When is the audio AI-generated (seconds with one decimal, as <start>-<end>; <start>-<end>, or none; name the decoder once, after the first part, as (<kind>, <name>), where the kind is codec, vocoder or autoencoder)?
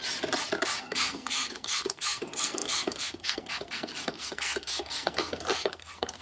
0.8-6.2 (codec, SNAC)